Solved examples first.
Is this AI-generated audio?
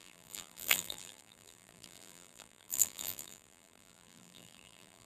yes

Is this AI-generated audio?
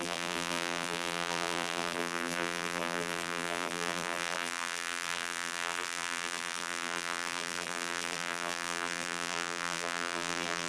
yes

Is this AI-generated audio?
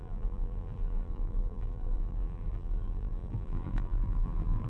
yes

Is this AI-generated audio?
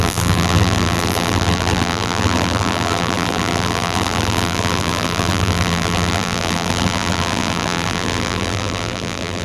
yes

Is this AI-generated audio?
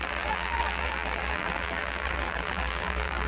yes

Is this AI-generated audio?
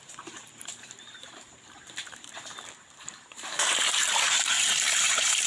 yes